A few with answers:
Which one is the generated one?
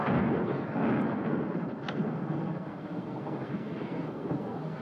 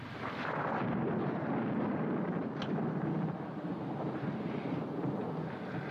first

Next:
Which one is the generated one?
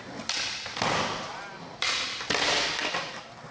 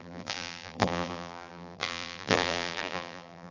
second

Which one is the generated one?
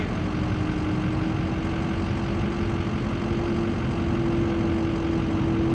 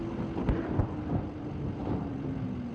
second